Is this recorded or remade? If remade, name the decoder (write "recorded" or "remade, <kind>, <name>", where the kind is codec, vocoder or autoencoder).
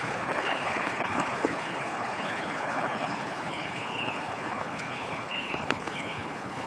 remade, codec, HILCodec